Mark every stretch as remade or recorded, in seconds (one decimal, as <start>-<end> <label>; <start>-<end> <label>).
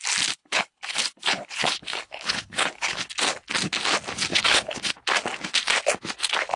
0.0-0.4 recorded; 0.4-3.1 remade; 3.1-4.3 recorded; 4.3-4.9 remade; 4.9-6.6 recorded